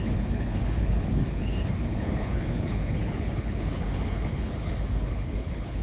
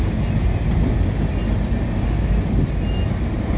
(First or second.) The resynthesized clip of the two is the first